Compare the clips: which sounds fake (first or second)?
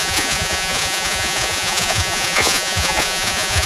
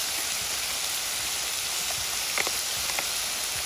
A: first